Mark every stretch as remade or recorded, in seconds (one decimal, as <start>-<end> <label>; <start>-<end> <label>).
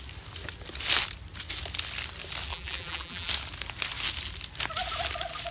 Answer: 0.0-2.5 recorded; 2.5-3.3 remade; 3.3-5.5 recorded